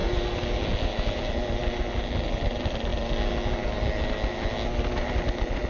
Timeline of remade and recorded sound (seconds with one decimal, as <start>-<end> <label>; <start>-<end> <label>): 0.0-5.7 recorded